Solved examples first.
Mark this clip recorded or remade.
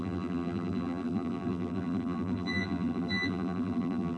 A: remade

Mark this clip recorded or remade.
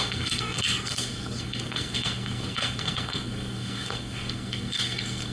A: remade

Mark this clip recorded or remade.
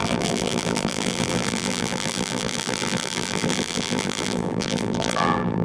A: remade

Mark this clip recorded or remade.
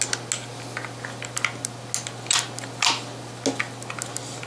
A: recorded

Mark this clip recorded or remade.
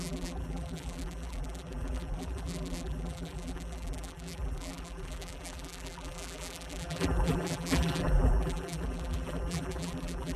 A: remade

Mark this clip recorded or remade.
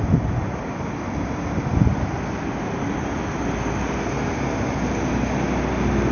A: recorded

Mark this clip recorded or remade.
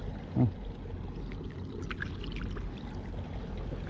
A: recorded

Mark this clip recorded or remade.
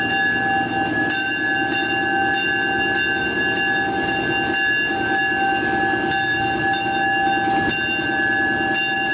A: recorded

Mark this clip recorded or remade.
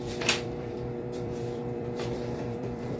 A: remade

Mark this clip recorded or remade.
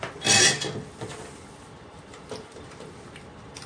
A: recorded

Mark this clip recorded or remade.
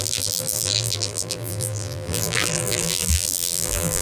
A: remade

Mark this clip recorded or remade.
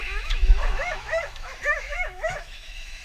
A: remade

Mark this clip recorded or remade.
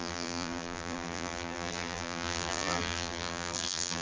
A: remade